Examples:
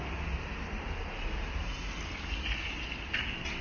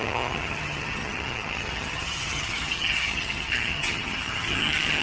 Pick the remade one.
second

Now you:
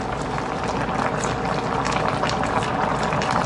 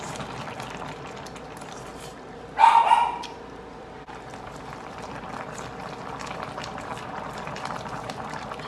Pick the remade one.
second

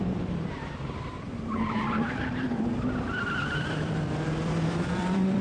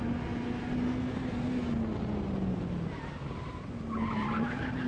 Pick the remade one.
first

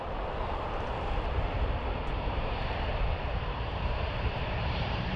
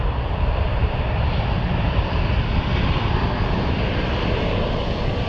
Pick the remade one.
first